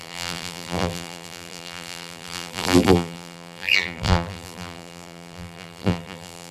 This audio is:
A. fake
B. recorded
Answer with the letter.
A